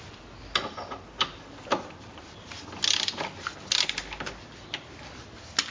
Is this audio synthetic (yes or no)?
no